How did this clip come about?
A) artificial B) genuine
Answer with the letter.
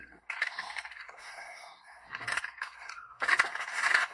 A